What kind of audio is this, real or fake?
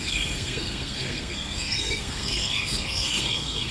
fake